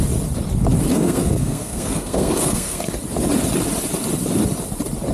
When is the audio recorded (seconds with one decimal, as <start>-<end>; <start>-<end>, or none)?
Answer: 0.0-0.9; 2.9-5.1